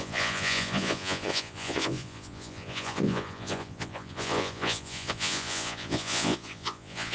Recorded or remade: remade